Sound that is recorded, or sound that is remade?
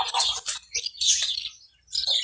recorded